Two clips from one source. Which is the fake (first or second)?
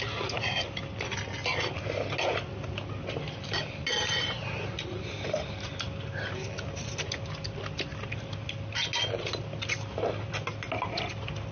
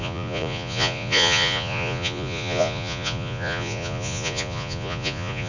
second